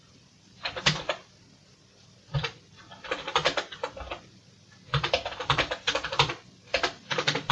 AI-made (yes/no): no